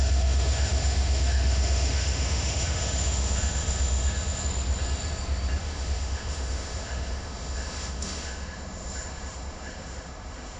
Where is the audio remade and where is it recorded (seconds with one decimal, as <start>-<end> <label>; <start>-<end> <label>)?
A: 0.0-4.4 remade; 4.4-5.6 recorded; 5.6-10.6 remade